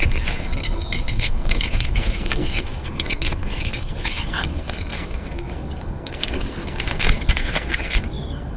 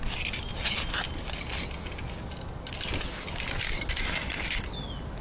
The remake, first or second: first